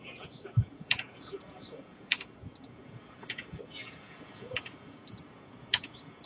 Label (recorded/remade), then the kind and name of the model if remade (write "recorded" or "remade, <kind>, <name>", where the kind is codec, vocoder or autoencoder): remade, vocoder, Vocos